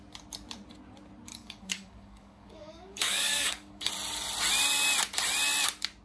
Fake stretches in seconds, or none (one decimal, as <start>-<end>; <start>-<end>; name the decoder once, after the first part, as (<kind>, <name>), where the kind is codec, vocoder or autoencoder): 1.3-3.9 (codec, DAC)